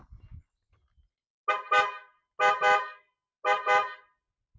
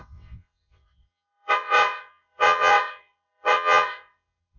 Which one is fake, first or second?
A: second